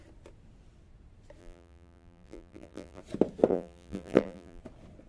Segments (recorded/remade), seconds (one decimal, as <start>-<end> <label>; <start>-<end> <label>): 0.0-1.4 recorded; 1.4-3.0 remade; 3.0-3.5 recorded; 3.5-4.6 remade; 4.6-5.1 recorded